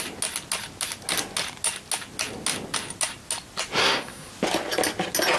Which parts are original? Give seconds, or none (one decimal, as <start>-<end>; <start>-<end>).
0.0-3.8; 4.3-5.4